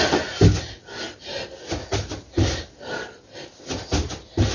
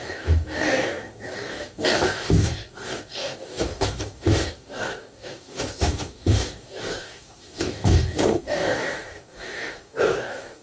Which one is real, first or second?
first